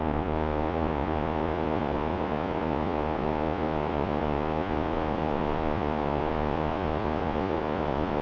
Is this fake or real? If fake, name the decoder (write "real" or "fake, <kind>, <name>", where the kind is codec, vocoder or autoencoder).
fake, vocoder, Vocos